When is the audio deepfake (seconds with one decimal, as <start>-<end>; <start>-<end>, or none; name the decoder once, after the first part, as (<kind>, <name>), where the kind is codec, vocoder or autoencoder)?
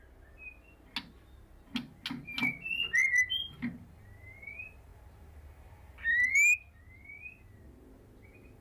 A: none